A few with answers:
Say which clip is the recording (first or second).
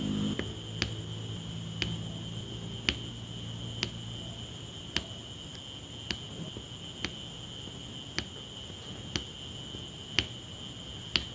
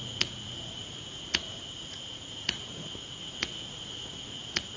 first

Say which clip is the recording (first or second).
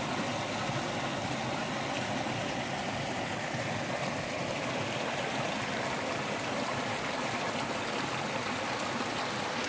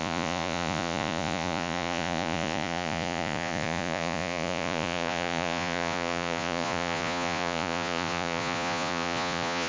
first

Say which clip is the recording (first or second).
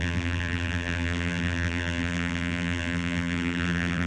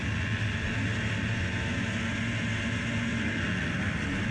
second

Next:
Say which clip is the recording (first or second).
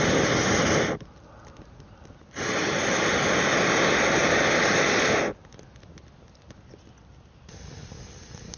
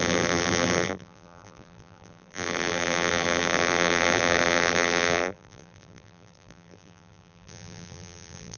first